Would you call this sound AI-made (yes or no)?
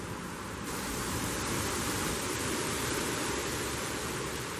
yes